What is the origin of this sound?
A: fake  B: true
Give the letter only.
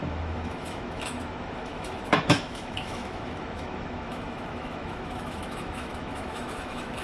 A